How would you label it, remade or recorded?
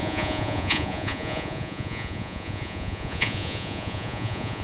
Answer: remade